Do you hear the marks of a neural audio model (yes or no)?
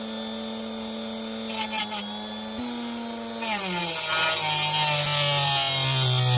no